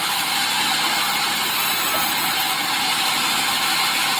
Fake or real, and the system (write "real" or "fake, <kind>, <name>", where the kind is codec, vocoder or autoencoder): real